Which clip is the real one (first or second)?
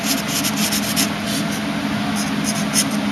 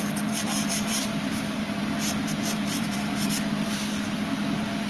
first